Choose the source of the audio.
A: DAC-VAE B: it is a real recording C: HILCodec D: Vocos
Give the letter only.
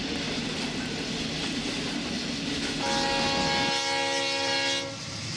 B